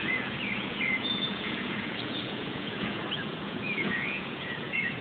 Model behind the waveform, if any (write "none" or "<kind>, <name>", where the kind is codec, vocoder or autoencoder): vocoder, Vocos